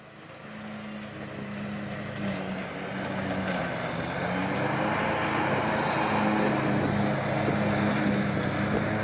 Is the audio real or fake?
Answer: real